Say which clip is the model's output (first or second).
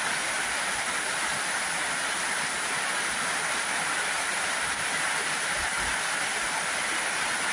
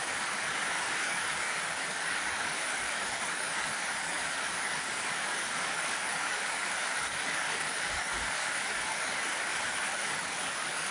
second